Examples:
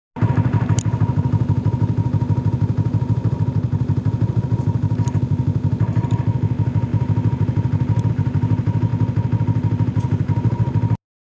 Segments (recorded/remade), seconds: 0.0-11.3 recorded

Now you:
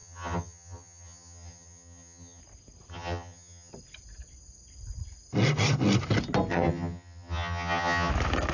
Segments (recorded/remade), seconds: 0.0-2.4 remade; 2.4-2.9 recorded; 2.9-3.7 remade; 3.7-6.5 recorded; 6.5-8.1 remade; 8.1-8.5 recorded

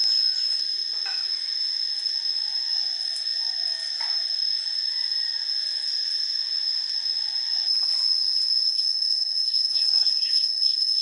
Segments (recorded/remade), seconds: 0.0-8.7 recorded; 8.7-11.0 remade

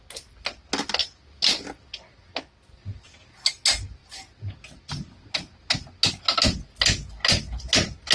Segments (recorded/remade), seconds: 0.0-8.1 recorded

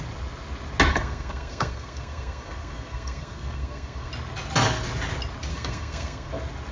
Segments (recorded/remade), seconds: 0.0-0.9 recorded; 0.9-4.1 remade; 4.1-5.5 recorded; 5.5-6.3 remade; 6.3-6.7 recorded

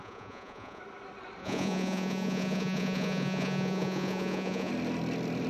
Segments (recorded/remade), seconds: 0.0-0.8 remade; 0.8-1.4 recorded; 1.4-4.7 remade; 4.7-5.5 recorded